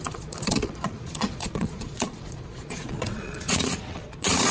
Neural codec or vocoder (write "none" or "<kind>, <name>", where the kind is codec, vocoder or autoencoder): vocoder, Vocos